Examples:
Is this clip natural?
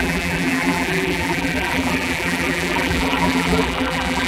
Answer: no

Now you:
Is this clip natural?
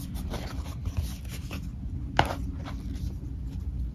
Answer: yes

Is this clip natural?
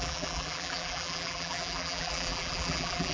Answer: no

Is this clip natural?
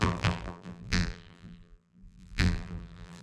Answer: no